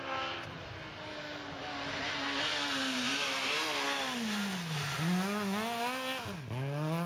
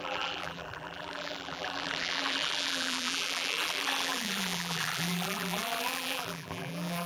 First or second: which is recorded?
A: first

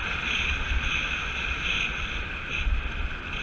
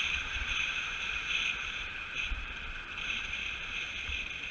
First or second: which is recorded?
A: first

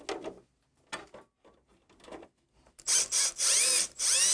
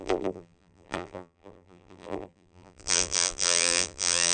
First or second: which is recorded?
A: first